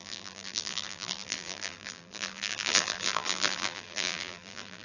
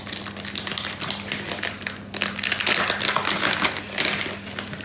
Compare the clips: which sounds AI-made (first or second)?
first